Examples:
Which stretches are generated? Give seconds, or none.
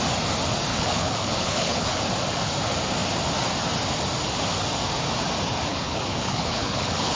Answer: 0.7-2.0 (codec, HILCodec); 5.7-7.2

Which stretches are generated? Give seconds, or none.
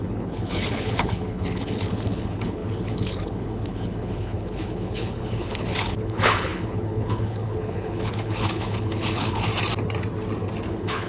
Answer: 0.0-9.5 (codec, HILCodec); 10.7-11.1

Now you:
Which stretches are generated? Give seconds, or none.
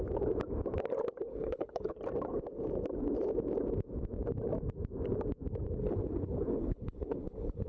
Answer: 1.3-1.9 (codec, HILCodec); 5.8-7.7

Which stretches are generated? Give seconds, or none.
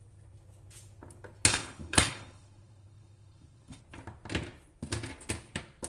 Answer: 1.5-3.8 (codec, HILCodec)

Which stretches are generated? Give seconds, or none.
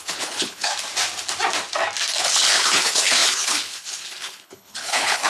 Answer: 0.0-0.7 (codec, HILCodec); 2.2-5.3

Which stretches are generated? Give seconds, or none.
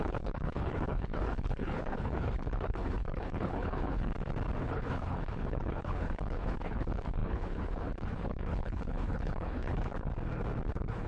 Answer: 0.0-4.1 (codec, HILCodec); 4.6-10.1; 10.7-11.1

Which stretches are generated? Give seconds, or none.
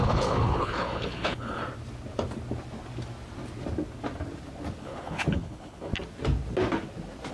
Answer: 0.0-1.6 (codec, HILCodec); 4.8-5.9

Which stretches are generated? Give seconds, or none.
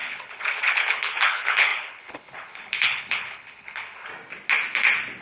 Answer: 0.0-4.1 (codec, HILCodec)